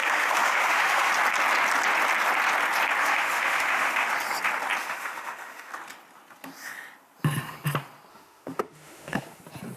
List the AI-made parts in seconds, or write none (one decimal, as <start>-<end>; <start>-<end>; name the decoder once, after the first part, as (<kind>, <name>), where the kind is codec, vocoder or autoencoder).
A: 0.0-1.1 (autoencoder, DAC-VAE); 3.0-4.1; 4.8-5.7; 8.1-9.4